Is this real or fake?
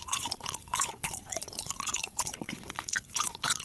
fake